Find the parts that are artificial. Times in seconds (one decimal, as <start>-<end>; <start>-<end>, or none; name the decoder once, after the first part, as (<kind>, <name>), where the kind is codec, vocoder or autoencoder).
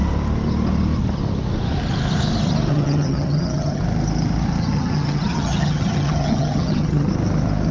2.7-3.8 (vocoder, HiFi-GAN); 4.6-7.1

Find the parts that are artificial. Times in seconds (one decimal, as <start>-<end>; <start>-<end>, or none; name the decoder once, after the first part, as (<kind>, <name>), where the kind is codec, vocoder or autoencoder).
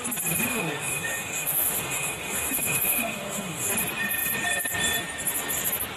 0.5-3.7 (autoencoder, DAC-VAE)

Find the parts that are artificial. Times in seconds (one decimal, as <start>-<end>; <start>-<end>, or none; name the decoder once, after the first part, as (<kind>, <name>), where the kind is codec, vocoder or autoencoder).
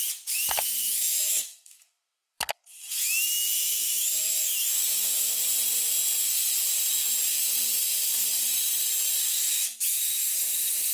0.8-5.4 (autoencoder, DAC-VAE); 9.2-10.4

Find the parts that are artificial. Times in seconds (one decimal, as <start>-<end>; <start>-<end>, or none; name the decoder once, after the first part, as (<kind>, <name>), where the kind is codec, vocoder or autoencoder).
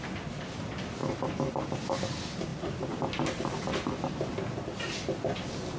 none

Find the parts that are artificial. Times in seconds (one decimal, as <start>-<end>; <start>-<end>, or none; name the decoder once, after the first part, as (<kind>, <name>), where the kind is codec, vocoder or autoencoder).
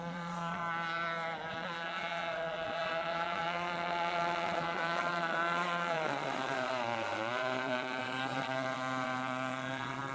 0.0-0.6 (vocoder, Vocos); 1.5-10.1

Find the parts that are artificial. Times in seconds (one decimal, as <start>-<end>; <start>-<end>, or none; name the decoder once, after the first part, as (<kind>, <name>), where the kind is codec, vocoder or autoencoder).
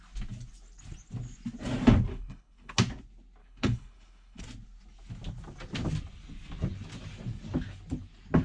2.1-2.7 (codec, HILCodec); 3.4-4.4